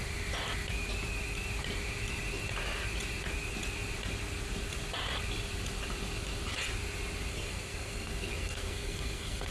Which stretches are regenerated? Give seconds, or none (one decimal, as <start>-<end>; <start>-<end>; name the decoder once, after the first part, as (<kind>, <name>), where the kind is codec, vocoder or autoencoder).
7.3-9.5 (codec, SNAC)